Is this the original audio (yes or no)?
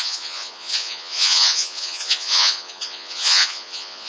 no